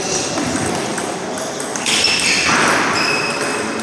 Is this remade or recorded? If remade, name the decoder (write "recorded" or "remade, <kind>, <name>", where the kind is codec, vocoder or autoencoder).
recorded